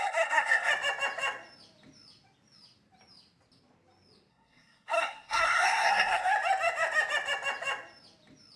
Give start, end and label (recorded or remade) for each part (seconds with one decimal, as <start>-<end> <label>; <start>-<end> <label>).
0.0-0.7 remade; 0.7-4.3 recorded; 4.3-6.3 remade; 6.3-8.6 recorded